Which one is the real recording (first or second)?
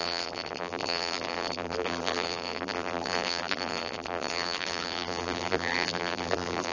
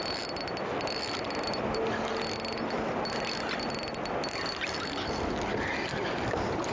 second